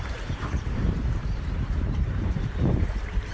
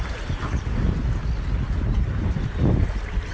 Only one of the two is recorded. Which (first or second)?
second